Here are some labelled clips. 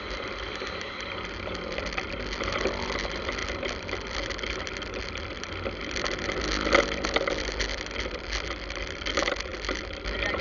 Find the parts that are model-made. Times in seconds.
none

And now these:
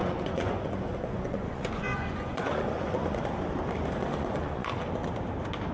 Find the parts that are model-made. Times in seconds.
0.0-3.3 (vocoder, Vocos); 4.1-4.8